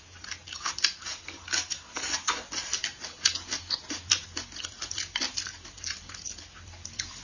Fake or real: real